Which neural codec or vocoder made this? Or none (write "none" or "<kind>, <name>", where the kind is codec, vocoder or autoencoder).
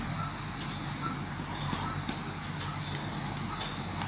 none